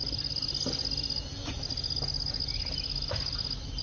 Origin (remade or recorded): recorded